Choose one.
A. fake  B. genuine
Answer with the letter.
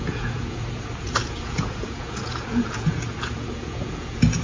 A